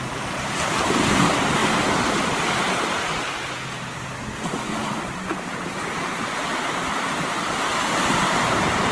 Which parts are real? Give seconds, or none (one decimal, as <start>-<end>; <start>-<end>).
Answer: 0.0-4.8; 7.6-8.9